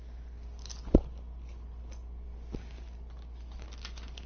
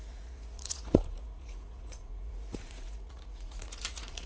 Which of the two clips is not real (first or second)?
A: second